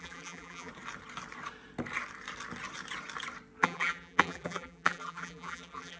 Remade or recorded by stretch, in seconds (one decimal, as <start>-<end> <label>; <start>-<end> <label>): 0.0-0.7 remade; 0.7-3.6 recorded; 3.6-6.0 remade